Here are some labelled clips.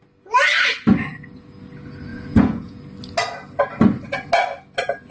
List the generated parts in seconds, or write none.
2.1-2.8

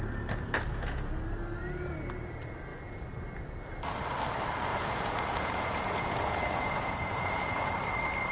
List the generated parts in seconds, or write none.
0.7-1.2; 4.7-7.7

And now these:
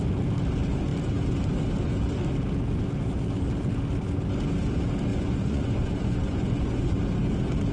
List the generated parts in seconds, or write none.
5.1-7.0

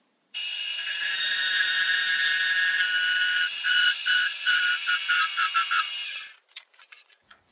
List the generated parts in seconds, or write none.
0.0-2.2; 3.5-4.7; 6.5-7.5

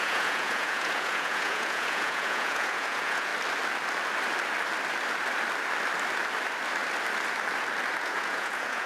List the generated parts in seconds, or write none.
0.0-3.3; 8.0-8.9

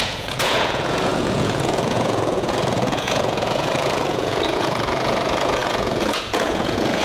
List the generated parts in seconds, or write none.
0.0-7.0

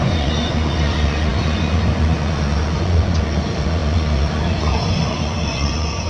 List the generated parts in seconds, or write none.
0.0-6.1

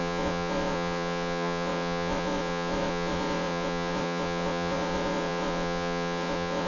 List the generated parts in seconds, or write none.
0.0-6.7